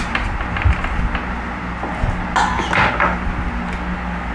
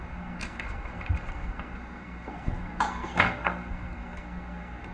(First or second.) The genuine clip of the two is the first